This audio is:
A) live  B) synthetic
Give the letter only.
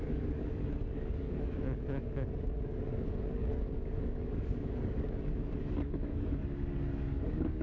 B